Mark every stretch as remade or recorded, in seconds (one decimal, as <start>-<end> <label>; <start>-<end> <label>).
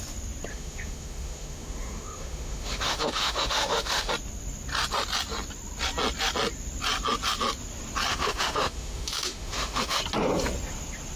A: 0.0-0.5 recorded; 0.5-4.1 remade; 4.1-8.1 recorded; 8.1-10.0 remade; 10.0-11.2 recorded